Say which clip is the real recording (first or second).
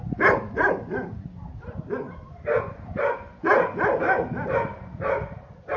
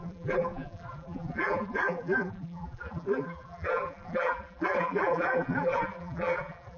first